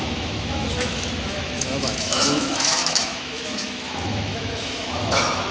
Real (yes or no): no